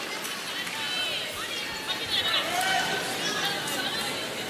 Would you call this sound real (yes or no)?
yes